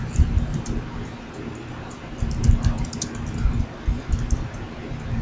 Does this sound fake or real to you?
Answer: real